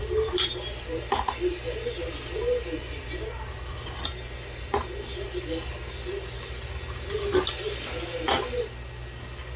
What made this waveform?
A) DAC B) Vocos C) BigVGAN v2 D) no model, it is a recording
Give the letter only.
D